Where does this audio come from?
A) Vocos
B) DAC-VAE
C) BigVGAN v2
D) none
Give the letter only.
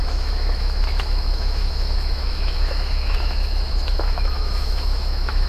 B